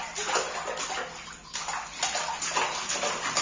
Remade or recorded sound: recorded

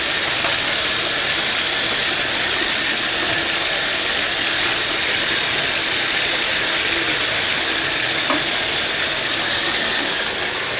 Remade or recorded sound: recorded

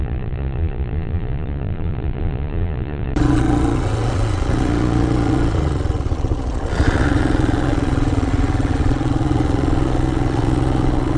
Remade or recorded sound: remade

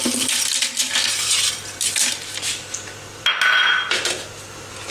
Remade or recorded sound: recorded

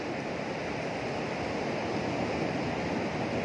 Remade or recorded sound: recorded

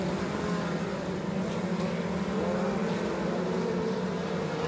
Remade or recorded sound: recorded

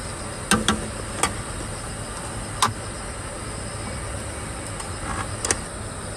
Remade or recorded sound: recorded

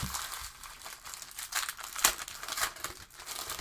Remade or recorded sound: remade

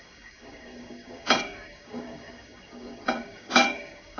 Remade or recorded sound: remade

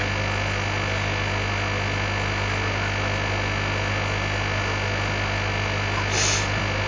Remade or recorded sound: recorded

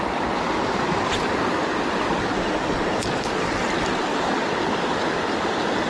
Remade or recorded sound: recorded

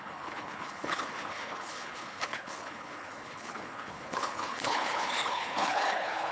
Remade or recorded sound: remade